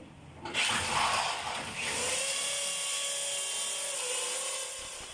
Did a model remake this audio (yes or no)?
no